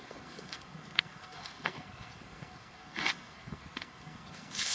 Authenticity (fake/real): fake